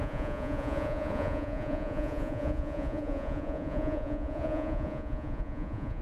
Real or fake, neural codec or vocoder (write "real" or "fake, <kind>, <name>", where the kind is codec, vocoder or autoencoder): fake, vocoder, Vocos